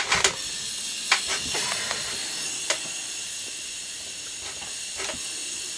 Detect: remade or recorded recorded